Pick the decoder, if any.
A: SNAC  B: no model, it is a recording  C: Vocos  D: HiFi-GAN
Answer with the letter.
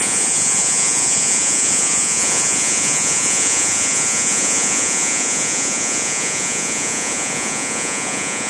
C